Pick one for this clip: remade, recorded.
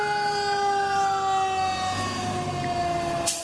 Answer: recorded